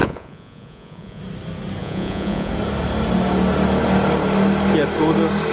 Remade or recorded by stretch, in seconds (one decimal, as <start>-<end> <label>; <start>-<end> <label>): 0.0-1.2 remade; 1.2-1.8 recorded; 1.8-2.5 remade; 2.5-5.5 recorded

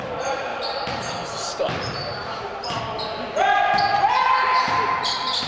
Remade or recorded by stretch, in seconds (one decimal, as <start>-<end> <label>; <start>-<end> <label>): 0.0-0.5 recorded; 0.5-2.8 remade; 2.8-3.9 recorded; 3.9-5.5 remade

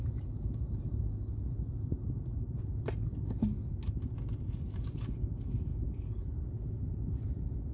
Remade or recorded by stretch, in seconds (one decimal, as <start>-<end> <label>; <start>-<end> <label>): 0.0-7.7 recorded

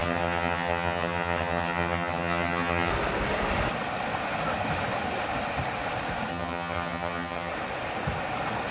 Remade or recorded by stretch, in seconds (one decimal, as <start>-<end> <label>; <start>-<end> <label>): 0.0-2.9 remade; 2.9-6.3 recorded; 6.3-7.5 remade; 7.5-8.7 recorded

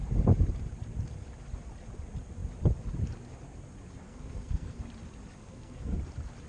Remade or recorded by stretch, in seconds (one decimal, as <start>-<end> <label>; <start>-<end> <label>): 0.0-4.0 recorded; 4.0-4.8 remade; 4.8-5.4 recorded; 5.4-6.0 remade; 6.0-6.5 recorded

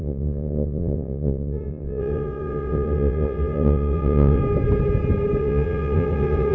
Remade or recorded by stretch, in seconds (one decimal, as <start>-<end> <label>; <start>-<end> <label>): 0.0-4.4 remade; 4.4-5.4 recorded; 5.4-6.5 remade

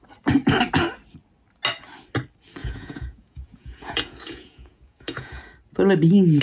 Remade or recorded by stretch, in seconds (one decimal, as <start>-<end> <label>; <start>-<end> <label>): 0.0-2.6 recorded; 2.6-5.4 remade; 5.4-6.4 recorded

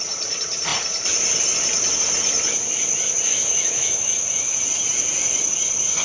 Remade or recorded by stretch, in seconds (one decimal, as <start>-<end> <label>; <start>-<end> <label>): 0.0-3.3 recorded; 3.3-4.6 remade; 4.6-6.0 recorded